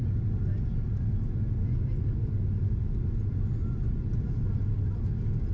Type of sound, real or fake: real